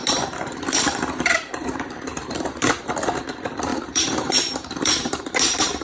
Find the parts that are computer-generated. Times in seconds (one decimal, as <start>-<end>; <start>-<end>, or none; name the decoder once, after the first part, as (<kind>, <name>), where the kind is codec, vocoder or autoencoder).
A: 0.0-2.8 (vocoder, BigVGAN v2); 3.7-5.2